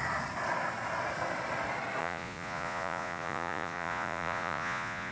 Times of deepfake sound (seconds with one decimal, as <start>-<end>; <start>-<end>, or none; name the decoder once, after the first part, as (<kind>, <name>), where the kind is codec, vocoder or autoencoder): 2.0-5.1 (vocoder, Vocos)